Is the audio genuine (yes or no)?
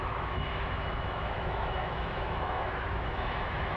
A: no